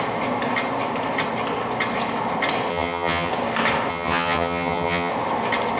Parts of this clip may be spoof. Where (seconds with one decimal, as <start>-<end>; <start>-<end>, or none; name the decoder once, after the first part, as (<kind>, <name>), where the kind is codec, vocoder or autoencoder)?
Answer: 2.7-3.3 (vocoder, HiFi-GAN); 3.9-5.1